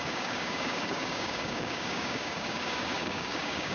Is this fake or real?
fake